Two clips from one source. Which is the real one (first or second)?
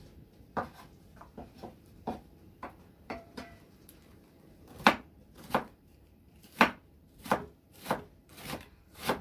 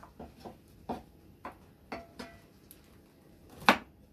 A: second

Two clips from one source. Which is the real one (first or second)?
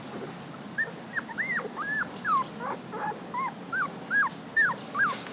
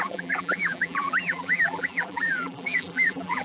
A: first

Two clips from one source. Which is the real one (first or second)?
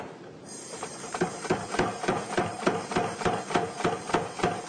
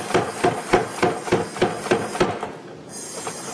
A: second